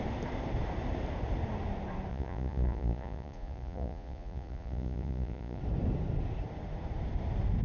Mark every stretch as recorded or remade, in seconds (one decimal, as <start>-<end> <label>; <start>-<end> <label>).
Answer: 0.0-2.1 recorded; 2.1-5.6 remade; 5.6-7.6 recorded